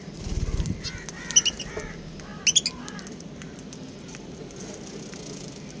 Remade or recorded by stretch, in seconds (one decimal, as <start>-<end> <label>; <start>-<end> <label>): 0.0-5.8 recorded